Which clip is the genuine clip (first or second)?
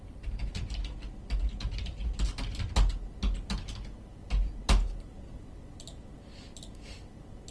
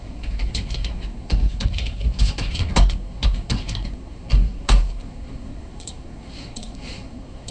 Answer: first